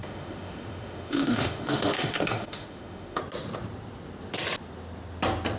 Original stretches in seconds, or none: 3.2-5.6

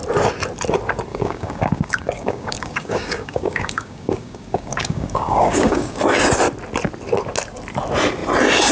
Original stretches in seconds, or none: 0.0-1.1; 6.0-8.7